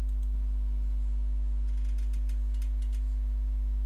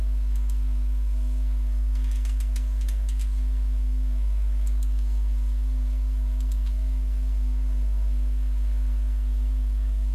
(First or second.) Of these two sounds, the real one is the first